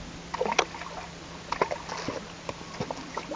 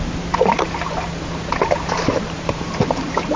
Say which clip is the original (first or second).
first